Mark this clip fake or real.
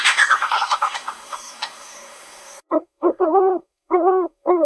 fake